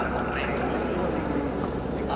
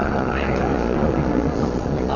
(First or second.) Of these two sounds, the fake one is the second